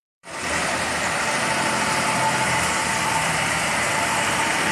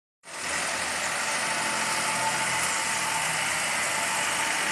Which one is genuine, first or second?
second